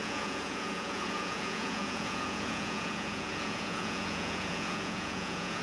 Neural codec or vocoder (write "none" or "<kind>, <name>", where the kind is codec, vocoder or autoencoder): vocoder, Vocos